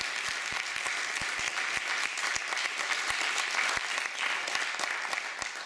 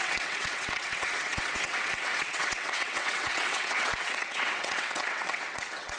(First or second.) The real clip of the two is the first